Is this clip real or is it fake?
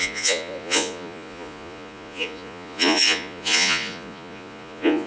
fake